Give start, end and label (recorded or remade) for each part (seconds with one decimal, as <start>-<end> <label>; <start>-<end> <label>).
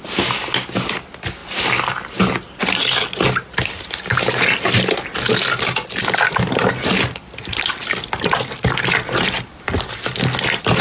0.0-10.8 recorded